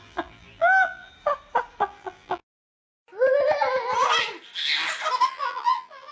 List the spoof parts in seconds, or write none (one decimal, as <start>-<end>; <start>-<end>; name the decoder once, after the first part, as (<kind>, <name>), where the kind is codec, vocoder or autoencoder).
0.0-1.1 (vocoder, BigVGAN v2); 1.8-2.4; 5.3-6.1